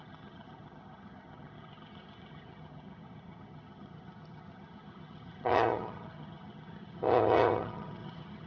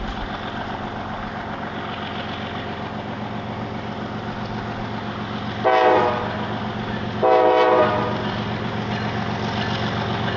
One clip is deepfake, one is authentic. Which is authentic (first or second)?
second